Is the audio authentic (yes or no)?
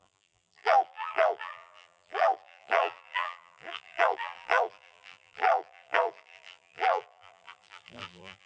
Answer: no